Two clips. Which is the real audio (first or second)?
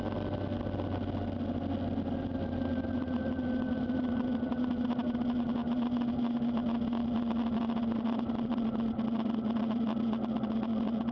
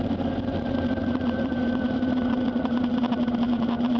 first